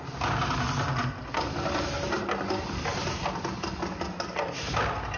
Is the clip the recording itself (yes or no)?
yes